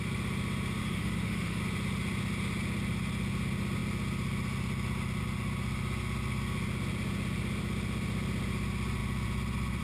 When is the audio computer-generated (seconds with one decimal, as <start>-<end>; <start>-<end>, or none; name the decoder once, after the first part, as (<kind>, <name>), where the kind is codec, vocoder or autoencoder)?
0.8-1.6 (autoencoder, DAC-VAE)